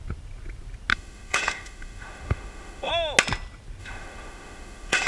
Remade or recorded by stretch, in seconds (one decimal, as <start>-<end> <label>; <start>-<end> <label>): 0.0-0.9 recorded; 0.9-2.9 remade; 2.9-3.8 recorded; 3.8-5.1 remade